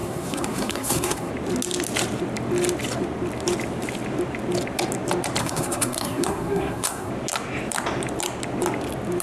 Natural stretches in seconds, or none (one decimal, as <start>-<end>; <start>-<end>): 1.3-5.4; 7.1-9.2